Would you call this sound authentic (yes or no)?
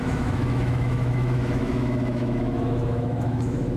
no